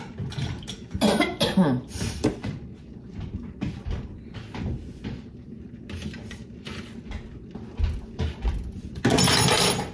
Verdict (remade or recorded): recorded